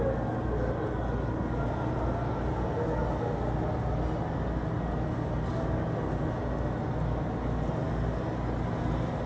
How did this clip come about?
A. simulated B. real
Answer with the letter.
B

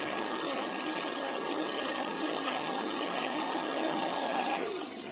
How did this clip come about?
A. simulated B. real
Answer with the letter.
A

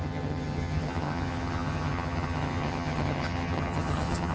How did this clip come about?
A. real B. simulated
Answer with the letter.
B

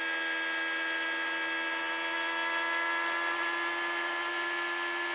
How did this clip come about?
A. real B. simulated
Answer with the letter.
A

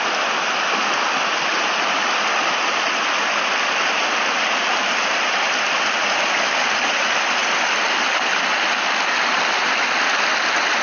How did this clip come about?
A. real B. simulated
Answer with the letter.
A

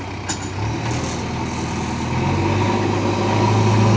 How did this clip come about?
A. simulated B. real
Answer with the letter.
B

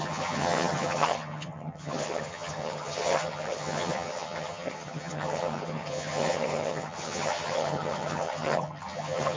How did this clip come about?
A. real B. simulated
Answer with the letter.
B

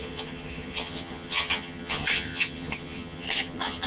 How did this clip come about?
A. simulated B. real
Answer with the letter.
A